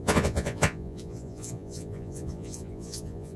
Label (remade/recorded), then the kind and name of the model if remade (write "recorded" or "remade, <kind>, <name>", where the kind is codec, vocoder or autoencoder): remade, vocoder, Vocos